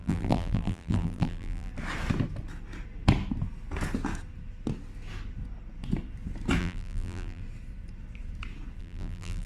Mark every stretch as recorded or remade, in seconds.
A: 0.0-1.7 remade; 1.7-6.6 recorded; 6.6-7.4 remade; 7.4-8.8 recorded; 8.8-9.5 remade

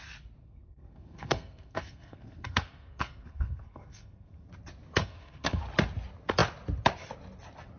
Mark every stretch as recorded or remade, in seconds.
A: 0.0-0.4 recorded; 0.4-4.5 remade; 4.5-5.0 recorded; 5.0-5.6 remade; 5.6-7.8 recorded

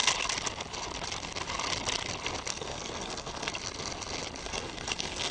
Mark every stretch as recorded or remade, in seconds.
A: 0.0-2.5 recorded; 2.5-3.5 remade; 3.5-4.4 recorded; 4.4-5.3 remade